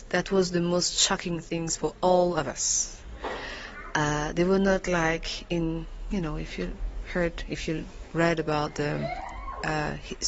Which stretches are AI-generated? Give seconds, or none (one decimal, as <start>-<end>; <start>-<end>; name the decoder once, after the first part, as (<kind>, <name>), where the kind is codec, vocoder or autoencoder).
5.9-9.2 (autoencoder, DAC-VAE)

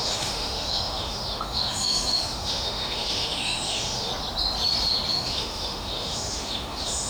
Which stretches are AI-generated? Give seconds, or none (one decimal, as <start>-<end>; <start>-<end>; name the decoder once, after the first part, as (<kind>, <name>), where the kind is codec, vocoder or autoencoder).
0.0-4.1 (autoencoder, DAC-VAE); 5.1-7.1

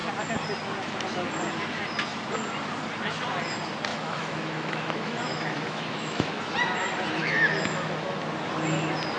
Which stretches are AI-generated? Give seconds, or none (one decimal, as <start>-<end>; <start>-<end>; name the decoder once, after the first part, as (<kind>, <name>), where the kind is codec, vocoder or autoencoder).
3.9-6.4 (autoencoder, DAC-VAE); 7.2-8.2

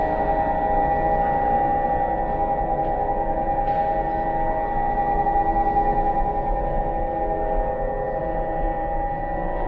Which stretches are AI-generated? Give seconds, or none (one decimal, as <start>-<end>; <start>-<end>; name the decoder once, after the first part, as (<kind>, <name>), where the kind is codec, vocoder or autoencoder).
8.2-9.2 (autoencoder, DAC-VAE)

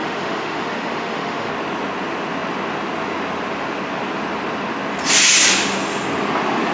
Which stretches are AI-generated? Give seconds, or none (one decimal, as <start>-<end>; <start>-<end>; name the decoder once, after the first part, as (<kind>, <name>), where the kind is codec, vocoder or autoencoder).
0.0-1.5 (autoencoder, DAC-VAE)

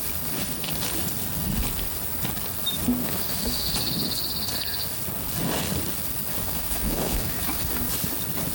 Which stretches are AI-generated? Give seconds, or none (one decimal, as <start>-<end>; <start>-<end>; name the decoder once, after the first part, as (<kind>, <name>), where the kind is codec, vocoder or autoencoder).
3.0-3.7 (autoencoder, DAC-VAE); 6.3-7.9